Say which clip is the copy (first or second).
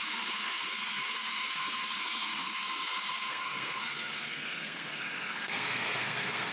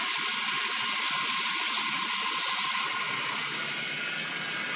first